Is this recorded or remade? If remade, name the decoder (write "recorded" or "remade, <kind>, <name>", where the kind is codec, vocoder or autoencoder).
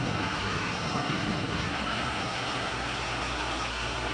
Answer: remade, codec, SNAC